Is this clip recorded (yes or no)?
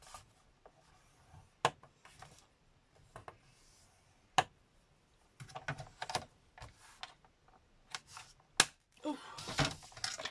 yes